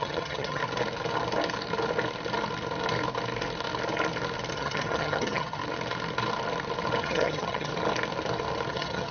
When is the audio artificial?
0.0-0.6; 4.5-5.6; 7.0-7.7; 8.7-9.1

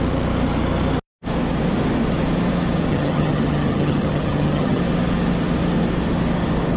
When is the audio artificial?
2.9-4.8

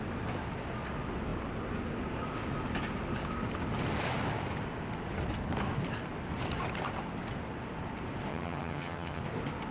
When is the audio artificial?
8.3-9.2

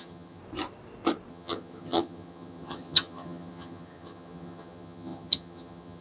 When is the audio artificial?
0.0-0.4; 1.3-6.0

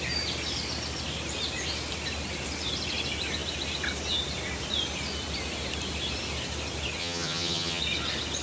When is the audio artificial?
7.0-7.8

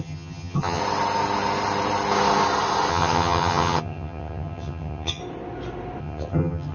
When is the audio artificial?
0.0-0.8; 2.9-5.2; 6.0-6.7

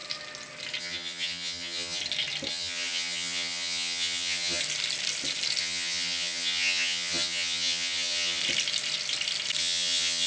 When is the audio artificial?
0.8-2.0; 2.5-4.6; 5.6-8.4; 9.6-10.3